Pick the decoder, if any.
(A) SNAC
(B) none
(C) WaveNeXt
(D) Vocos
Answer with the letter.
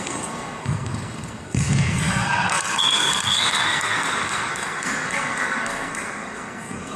A